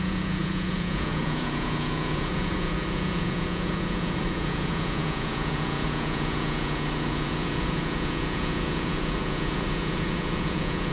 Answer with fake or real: fake